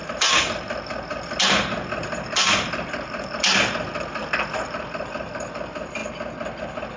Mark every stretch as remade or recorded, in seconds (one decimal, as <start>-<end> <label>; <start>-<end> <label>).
0.0-4.2 recorded; 4.2-6.0 remade; 6.0-6.6 recorded; 6.6-7.0 remade